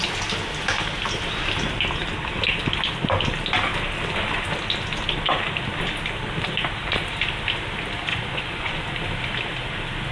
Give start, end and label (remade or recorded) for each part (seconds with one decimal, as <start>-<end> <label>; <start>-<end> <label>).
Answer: 0.0-8.1 recorded; 8.1-8.8 remade; 8.8-10.1 recorded